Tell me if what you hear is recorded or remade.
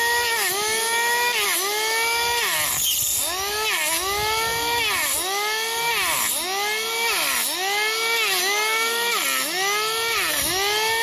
recorded